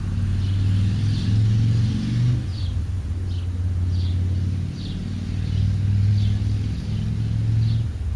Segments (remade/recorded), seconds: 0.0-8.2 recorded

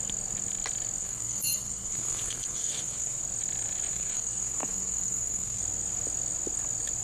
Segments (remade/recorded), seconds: 0.0-1.0 recorded; 1.0-3.2 remade; 3.2-3.9 recorded; 3.9-5.6 remade; 5.6-7.0 recorded

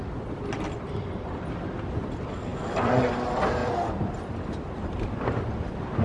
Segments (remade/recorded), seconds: 0.0-6.0 recorded

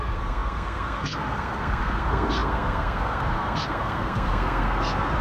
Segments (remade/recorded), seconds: 0.0-5.2 remade

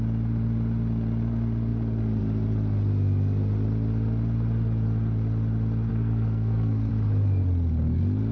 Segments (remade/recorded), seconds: 0.0-5.9 recorded; 5.9-6.9 remade; 6.9-8.3 recorded

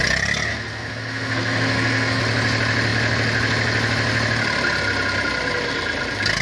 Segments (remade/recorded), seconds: 0.0-0.5 recorded; 0.5-2.2 remade; 2.2-6.4 recorded

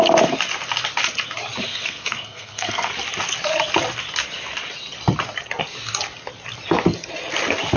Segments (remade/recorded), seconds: 0.0-1.7 recorded; 1.7-2.9 remade; 2.9-7.8 recorded

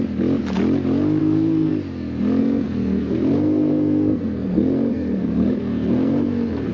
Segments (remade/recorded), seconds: 0.0-1.2 recorded; 1.2-1.7 remade; 1.7-2.4 recorded; 2.4-6.7 remade